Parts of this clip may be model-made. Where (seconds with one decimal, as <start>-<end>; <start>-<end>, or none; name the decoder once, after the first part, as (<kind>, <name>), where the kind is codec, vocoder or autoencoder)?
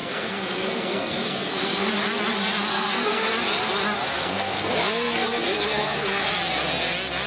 0.0-1.9 (codec, SNAC); 2.7-3.3; 4.2-6.3